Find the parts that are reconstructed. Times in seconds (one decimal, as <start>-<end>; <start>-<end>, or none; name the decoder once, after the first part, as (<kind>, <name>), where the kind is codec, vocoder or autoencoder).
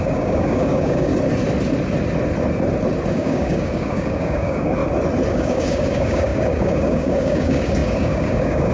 0.0-1.1 (codec, DAC); 3.1-4.8; 5.3-8.7